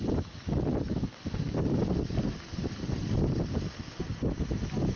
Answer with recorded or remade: recorded